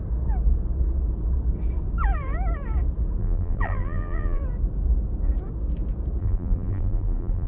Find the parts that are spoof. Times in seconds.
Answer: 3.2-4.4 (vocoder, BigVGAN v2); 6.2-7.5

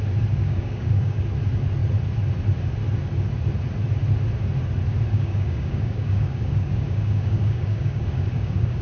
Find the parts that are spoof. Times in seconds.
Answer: 0.4-1.2 (codec, DAC); 5.1-8.8

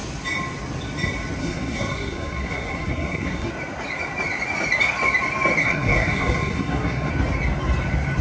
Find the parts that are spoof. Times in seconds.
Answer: 1.4-3.5 (codec, SNAC); 5.6-7.1

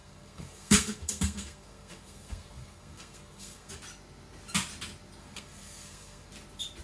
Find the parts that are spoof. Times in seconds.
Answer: 0.0-3.7 (codec, SNAC); 5.2-6.3